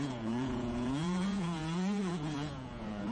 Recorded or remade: remade